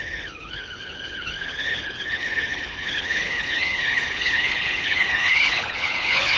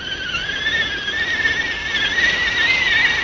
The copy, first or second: first